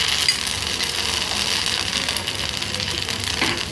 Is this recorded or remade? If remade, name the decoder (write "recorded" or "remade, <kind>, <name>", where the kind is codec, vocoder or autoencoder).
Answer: recorded